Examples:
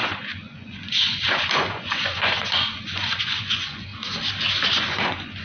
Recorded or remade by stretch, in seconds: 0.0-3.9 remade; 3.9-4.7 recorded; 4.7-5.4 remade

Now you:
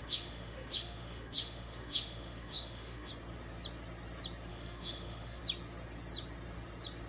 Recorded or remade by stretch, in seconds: 0.0-3.1 remade; 3.1-4.5 recorded; 4.5-5.4 remade; 5.4-7.1 recorded